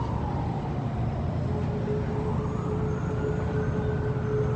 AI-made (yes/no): no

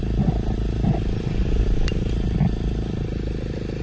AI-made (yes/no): no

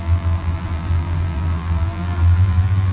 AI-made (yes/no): yes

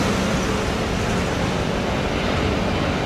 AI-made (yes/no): no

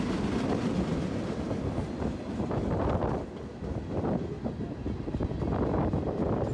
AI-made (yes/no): no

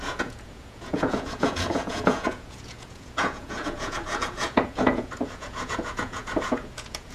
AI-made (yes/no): yes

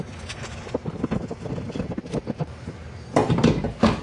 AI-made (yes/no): no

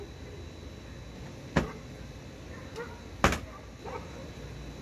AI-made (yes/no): no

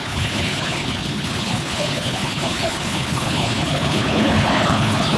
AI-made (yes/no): yes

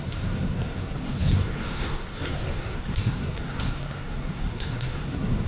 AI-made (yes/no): yes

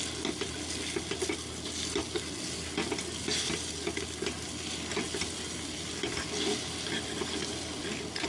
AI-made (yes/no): no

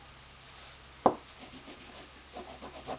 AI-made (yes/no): no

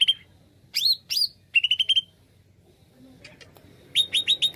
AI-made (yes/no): no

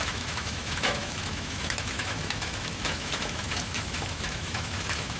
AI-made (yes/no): yes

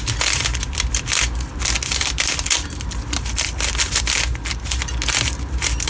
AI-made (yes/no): no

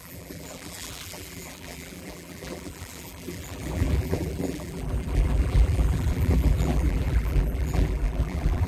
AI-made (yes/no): yes